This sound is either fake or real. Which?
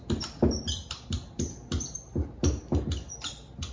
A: real